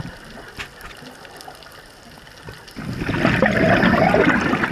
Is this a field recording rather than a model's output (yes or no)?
yes